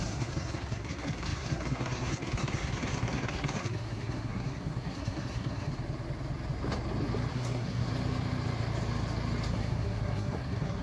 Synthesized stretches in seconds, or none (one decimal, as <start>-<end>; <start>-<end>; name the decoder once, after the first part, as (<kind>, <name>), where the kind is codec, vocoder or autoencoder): 0.0-5.7 (codec, SNAC); 7.3-7.9; 9.5-10.8